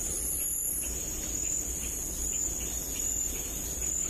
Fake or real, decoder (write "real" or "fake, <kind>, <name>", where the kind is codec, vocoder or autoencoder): real